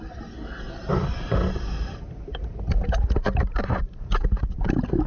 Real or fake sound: real